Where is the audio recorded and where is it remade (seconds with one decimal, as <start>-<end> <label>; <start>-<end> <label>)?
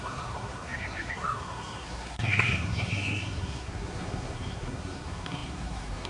0.0-6.1 remade